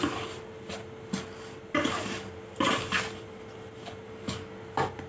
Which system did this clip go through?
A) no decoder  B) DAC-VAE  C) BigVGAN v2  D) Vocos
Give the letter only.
A